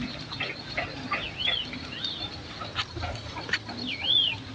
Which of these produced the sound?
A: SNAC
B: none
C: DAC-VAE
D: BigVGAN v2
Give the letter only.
B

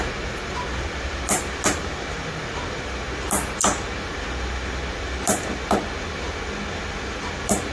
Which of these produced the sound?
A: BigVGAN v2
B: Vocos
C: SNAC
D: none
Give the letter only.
D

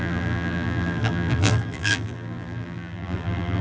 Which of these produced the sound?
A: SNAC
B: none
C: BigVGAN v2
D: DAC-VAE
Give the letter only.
C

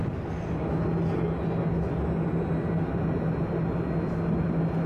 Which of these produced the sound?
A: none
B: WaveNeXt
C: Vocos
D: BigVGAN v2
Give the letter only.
A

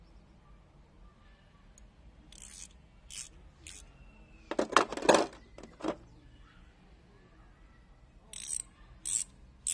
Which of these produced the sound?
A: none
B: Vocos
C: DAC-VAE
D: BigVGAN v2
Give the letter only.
A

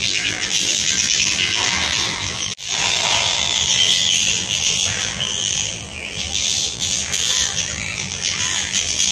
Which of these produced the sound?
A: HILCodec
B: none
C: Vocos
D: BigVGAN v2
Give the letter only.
D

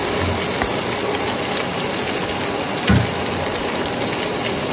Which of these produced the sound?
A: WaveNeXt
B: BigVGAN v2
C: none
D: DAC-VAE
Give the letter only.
C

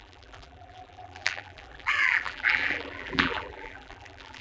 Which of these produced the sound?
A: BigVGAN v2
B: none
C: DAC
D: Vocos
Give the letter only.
A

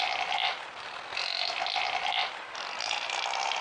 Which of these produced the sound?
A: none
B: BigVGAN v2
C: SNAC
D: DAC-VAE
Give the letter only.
A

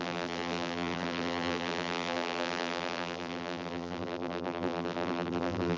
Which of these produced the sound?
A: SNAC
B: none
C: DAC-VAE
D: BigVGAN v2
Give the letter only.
D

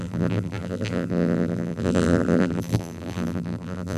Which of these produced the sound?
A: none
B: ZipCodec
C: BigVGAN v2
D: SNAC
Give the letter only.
C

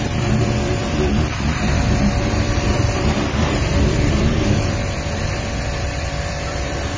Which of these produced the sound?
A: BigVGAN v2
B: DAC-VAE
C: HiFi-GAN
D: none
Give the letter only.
A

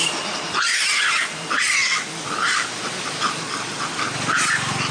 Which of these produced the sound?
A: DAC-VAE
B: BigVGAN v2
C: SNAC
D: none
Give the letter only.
D